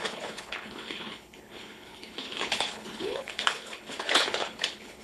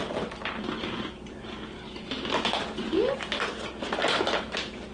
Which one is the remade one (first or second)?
first